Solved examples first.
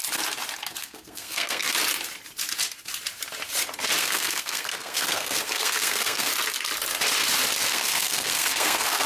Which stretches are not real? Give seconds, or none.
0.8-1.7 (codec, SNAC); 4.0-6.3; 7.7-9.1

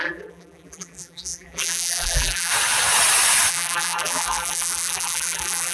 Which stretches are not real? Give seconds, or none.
0.0-2.5 (vocoder, BigVGAN v2); 3.5-5.7

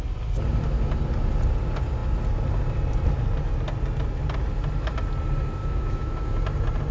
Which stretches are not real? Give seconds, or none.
5.6-6.4 (autoencoder, DAC-VAE)

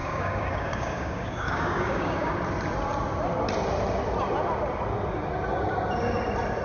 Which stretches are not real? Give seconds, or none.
0.0-2.3 (codec, DAC)

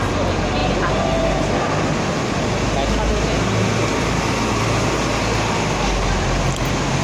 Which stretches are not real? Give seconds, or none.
none

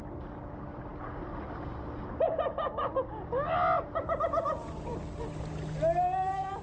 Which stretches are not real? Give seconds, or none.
none